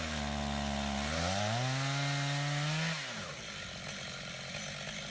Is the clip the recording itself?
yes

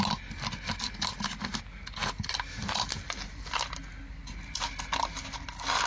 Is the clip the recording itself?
yes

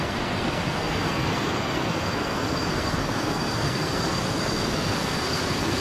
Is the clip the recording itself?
no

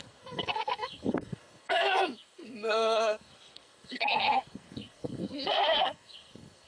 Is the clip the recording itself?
no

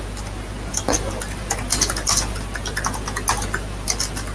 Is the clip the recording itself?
yes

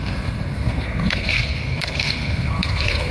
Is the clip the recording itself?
no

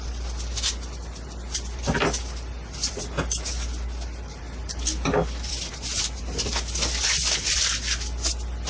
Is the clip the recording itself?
yes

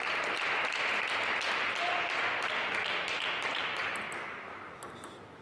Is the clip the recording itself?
yes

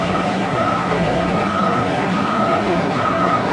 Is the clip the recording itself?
no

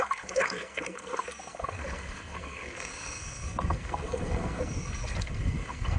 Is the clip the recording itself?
no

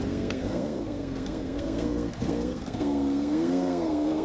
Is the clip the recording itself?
no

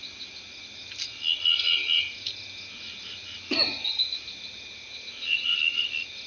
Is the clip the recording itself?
yes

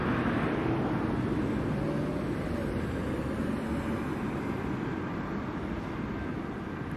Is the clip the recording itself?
yes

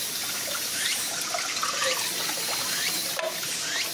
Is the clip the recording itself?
yes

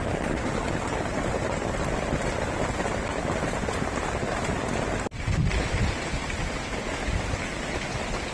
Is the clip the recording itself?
yes